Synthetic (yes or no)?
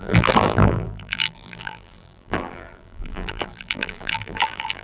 yes